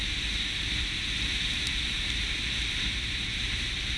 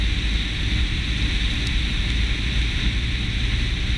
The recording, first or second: second